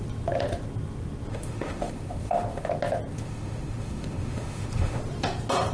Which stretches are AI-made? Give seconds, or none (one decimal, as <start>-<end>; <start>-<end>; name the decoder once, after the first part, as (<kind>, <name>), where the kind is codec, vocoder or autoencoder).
1.3-2.7 (autoencoder, DAC-VAE); 3.1-5.0